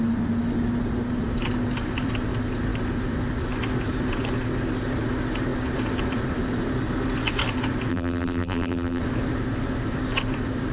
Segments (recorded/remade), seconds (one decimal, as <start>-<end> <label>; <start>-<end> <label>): 0.0-7.9 recorded; 7.9-9.0 remade; 9.0-10.7 recorded